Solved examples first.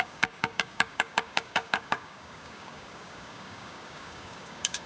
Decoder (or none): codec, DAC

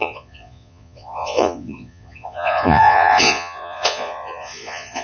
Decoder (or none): vocoder, Vocos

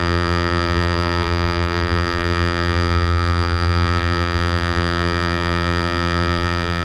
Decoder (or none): vocoder, BigVGAN v2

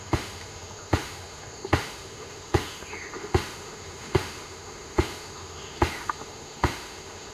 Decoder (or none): autoencoder, DAC-VAE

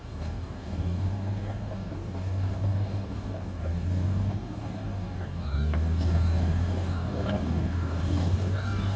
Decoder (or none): codec, DAC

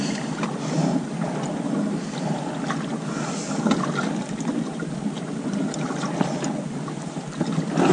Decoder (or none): none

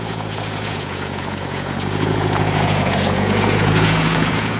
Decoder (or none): vocoder, Vocos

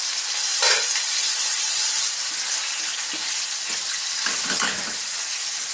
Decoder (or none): none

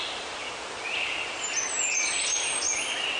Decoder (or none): none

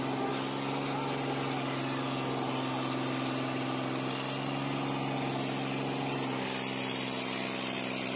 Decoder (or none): none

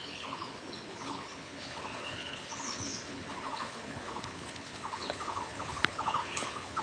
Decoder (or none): codec, HILCodec